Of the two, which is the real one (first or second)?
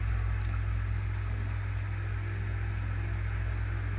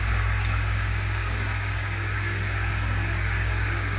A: first